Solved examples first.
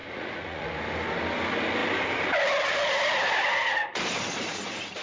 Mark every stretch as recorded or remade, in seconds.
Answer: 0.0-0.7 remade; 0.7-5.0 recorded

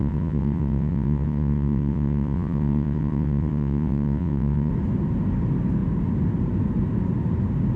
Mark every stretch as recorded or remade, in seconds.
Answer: 0.0-4.7 remade; 4.7-7.8 recorded

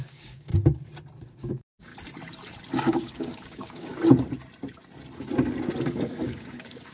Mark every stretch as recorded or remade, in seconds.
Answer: 0.0-0.5 remade; 0.5-1.2 recorded; 1.2-1.9 remade; 1.9-2.8 recorded; 2.8-3.9 remade; 3.9-5.8 recorded; 5.8-6.9 remade

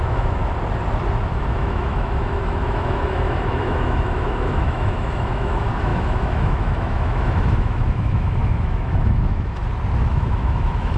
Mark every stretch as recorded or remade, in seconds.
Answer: 0.0-0.4 remade; 0.4-1.3 recorded; 1.3-9.6 remade; 9.6-10.1 recorded; 10.1-11.0 remade

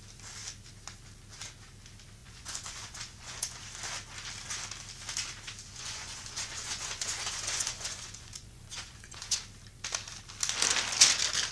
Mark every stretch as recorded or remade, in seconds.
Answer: 0.0-2.2 recorded; 2.2-3.6 remade; 3.6-5.7 recorded; 5.7-9.4 remade; 9.4-11.5 recorded